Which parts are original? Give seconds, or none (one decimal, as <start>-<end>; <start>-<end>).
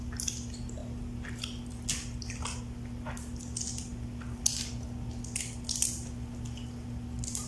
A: 0.0-7.5